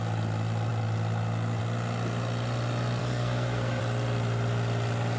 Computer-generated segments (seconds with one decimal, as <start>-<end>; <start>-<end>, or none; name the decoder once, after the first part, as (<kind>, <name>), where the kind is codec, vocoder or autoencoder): 3.0-3.8 (codec, SNAC)

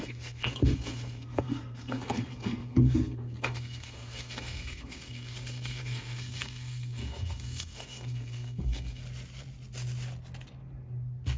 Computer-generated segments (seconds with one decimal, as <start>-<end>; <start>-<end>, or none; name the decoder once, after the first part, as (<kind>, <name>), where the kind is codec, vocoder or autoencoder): 0.0-9.0 (codec, SNAC)

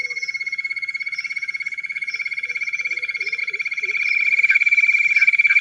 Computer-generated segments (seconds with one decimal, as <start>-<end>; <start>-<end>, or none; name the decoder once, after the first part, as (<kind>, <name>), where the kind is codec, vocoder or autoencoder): 0.0-3.4 (vocoder, Vocos)

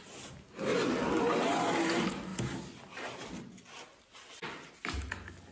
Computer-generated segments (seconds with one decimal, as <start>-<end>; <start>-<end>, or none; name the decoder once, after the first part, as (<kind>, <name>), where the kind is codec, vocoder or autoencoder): none

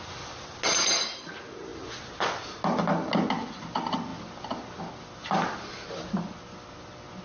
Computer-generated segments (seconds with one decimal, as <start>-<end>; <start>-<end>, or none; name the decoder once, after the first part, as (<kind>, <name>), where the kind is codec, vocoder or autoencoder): none

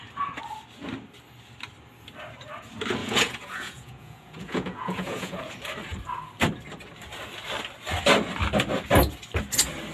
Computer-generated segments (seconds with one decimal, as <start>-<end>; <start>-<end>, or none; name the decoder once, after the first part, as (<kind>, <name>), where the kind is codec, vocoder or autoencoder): 3.0-5.4 (vocoder, Vocos)

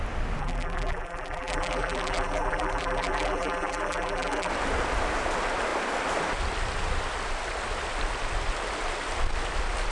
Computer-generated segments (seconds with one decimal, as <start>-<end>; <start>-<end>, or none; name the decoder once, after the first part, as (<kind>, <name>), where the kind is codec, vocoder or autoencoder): 0.4-4.5 (vocoder, BigVGAN v2)

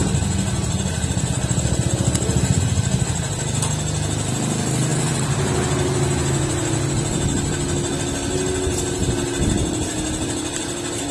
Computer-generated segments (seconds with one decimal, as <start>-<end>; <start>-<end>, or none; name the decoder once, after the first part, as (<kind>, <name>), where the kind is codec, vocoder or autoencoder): none